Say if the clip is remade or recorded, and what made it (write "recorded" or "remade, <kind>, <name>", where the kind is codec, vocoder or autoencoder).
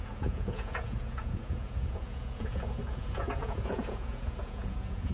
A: remade, vocoder, Vocos